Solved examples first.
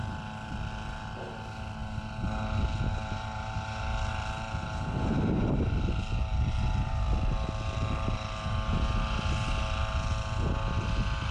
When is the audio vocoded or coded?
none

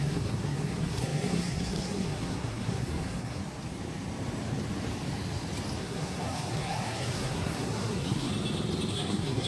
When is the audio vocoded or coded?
0.0-3.4 (codec, SNAC); 5.8-8.3; 8.9-9.5

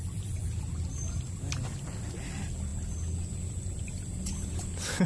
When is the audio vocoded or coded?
none

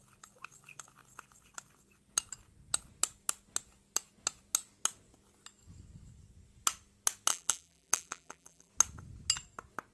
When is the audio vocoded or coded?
7.3-8.7 (vocoder, BigVGAN v2)

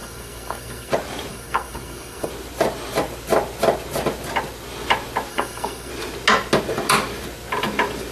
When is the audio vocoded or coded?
0.0-0.9 (codec, SNAC); 1.3-2.3; 5.3-5.9